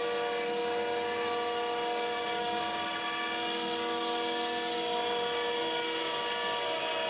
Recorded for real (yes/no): yes